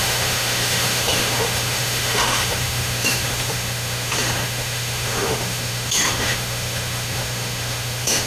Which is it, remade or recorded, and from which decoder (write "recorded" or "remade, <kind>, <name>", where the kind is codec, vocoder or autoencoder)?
remade, autoencoder, DAC-VAE